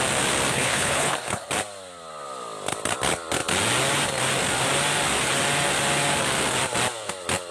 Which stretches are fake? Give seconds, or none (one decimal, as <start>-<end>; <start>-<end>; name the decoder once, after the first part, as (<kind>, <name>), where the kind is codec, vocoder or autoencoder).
0.5-1.5 (codec, HILCodec)